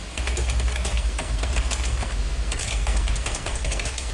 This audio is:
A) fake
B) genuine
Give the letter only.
A